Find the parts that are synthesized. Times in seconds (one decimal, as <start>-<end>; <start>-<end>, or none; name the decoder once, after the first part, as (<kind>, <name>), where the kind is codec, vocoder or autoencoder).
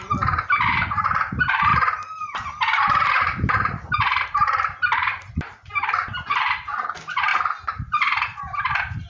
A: 1.7-5.9 (vocoder, BigVGAN v2)